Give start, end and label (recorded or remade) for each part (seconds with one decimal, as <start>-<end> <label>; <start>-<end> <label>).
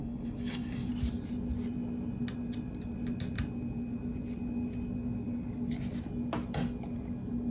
0.0-0.9 remade; 0.9-7.5 recorded